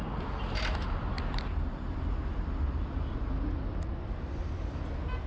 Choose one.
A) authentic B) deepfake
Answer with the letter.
A